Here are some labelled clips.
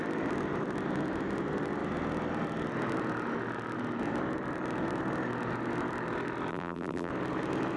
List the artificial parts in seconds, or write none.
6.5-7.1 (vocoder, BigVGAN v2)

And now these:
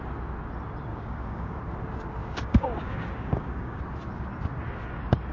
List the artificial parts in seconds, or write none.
0.9-1.6 (codec, DAC); 2.2-3.8

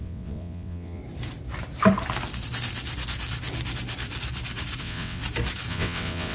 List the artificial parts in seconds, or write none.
0.0-1.0 (vocoder, WaveNeXt); 4.8-5.2; 5.7-6.3

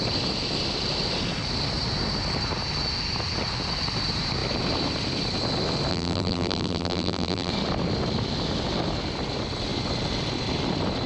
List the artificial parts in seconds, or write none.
5.9-7.5 (vocoder, BigVGAN v2)

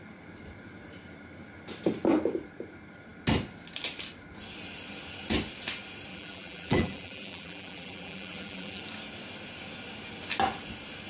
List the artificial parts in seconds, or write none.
6.1-8.8 (vocoder, BigVGAN v2)

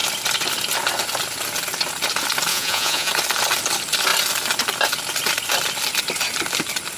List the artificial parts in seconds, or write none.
2.5-3.1 (vocoder, Vocos)

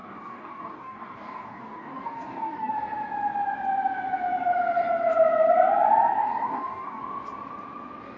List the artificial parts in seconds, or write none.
0.0-2.7 (codec, DAC); 6.2-7.0

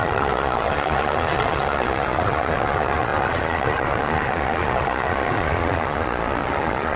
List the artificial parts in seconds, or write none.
0.0-7.0 (vocoder, Vocos)